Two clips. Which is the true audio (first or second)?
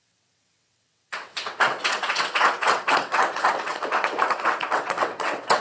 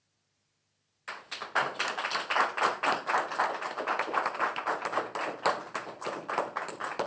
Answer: second